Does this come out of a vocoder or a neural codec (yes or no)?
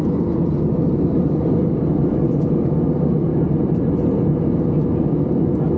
no